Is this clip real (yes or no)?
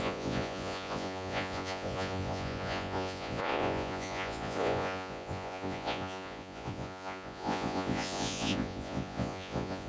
no